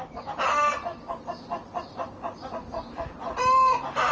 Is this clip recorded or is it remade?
recorded